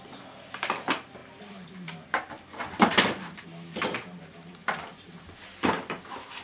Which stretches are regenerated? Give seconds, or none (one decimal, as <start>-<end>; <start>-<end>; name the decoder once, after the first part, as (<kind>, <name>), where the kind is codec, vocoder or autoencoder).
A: 1.2-2.3 (vocoder, BigVGAN v2); 4.6-5.7